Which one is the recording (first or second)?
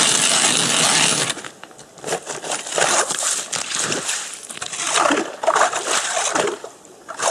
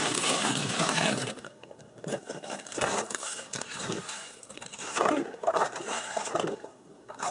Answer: first